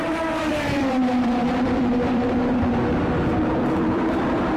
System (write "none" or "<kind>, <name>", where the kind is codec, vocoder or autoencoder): vocoder, BigVGAN v2